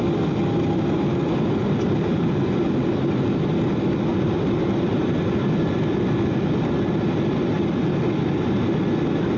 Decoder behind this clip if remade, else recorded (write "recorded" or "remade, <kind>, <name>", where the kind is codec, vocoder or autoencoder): recorded